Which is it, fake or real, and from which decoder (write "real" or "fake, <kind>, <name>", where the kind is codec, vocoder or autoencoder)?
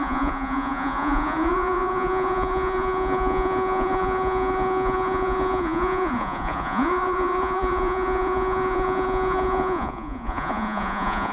fake, vocoder, Vocos